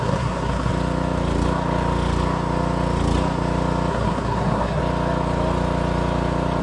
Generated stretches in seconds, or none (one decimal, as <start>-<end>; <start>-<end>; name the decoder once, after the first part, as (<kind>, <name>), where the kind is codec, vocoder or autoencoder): 0.0-0.7 (codec, SNAC); 3.9-4.8